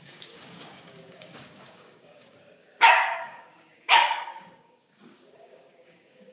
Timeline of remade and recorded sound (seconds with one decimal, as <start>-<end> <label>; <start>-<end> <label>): 0.0-6.3 remade